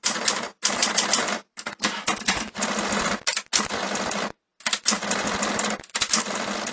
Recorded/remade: recorded